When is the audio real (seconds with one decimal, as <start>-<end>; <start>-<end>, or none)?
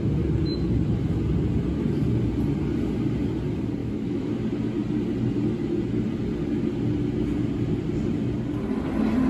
0.0-3.8; 4.3-9.3